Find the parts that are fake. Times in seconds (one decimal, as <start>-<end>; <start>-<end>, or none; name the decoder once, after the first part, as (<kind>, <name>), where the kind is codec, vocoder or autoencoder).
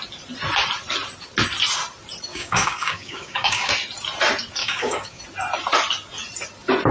2.3-3.7 (codec, DAC); 4.6-5.2